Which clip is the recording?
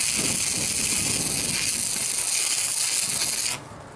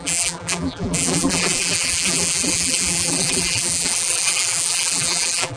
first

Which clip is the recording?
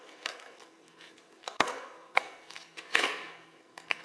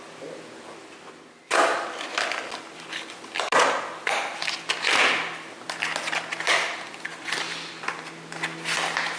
second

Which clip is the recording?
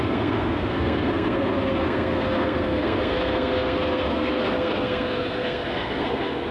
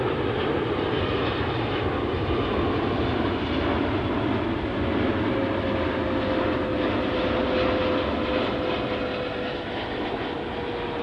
second